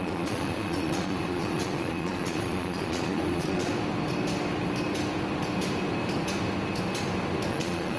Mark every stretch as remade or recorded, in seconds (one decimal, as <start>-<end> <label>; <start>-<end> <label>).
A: 0.0-3.7 remade; 3.7-7.5 recorded; 7.5-8.0 remade